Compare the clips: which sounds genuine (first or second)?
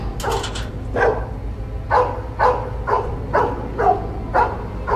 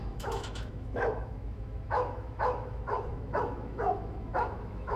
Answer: first